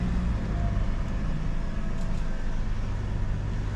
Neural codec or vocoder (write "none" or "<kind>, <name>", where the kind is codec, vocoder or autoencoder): none